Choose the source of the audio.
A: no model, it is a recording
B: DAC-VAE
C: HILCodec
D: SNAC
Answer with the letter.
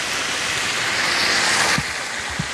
A